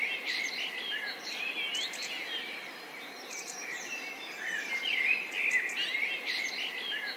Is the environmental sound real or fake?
real